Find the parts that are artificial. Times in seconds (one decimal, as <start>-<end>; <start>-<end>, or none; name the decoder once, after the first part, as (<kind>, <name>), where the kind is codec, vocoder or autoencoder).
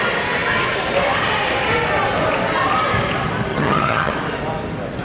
3.5-4.1 (vocoder, HiFi-GAN)